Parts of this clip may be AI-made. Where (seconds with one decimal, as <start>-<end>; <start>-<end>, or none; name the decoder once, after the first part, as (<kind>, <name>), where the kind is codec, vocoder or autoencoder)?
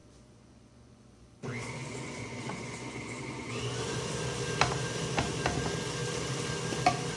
0.0-4.0 (vocoder, Vocos)